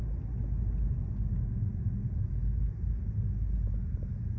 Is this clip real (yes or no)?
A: yes